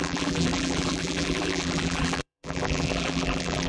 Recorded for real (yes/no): no